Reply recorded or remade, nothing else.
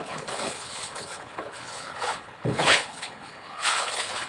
remade